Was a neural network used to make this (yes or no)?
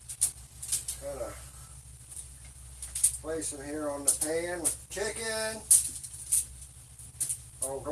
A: no